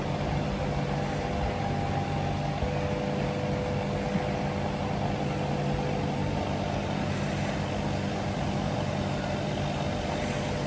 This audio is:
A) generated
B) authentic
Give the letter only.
B